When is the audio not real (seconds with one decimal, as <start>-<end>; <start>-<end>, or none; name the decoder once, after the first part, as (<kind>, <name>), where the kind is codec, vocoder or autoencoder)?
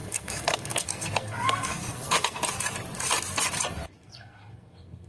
0.0-2.4 (codec, SNAC); 3.9-5.1